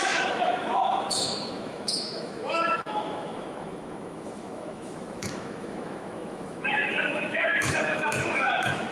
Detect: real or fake fake